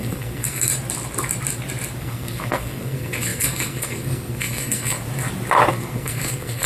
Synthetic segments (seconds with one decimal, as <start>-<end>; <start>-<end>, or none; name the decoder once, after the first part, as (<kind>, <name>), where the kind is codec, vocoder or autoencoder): 0.0-0.7 (codec, SNAC); 2.0-5.0; 5.7-6.7